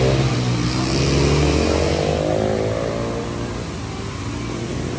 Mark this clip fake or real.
real